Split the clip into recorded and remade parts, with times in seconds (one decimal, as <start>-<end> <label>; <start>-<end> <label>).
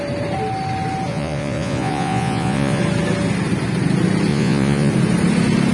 0.0-1.1 recorded; 1.1-2.8 remade; 2.8-4.3 recorded; 4.3-4.9 remade; 4.9-5.7 recorded